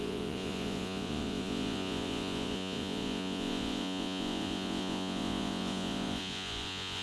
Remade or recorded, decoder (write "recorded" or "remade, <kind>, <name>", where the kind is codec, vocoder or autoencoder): remade, vocoder, Vocos